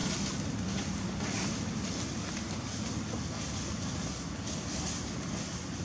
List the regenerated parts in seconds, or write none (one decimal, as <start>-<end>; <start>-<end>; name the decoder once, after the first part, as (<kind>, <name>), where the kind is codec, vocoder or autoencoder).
none